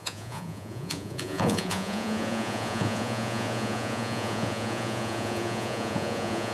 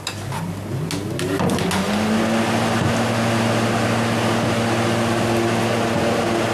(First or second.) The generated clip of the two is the first